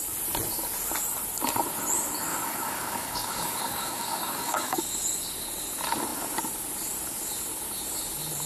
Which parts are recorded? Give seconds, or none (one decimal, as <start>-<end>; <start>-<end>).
0.0-2.3; 4.8-8.5